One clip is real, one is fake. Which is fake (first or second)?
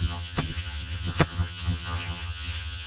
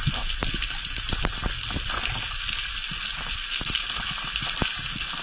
first